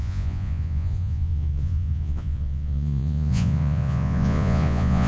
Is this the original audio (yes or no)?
no